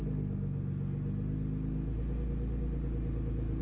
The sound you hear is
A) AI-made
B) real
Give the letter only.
B